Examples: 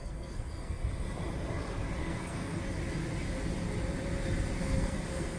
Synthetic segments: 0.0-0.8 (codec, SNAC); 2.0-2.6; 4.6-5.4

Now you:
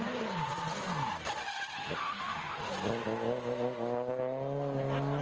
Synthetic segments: 1.8-2.7 (autoencoder, DAC-VAE)

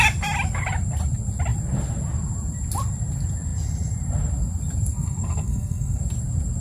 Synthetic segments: 4.9-6.0 (codec, SNAC)

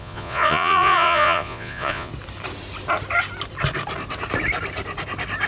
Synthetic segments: 0.0-2.1 (vocoder, Vocos)

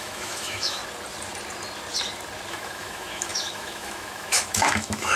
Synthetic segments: 0.0-0.8 (autoencoder, DAC-VAE); 2.5-5.2

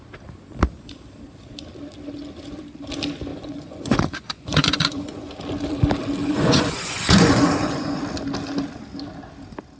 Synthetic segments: 3.3-5.3 (vocoder, Vocos); 6.2-8.0

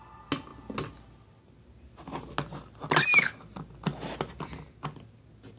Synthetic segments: none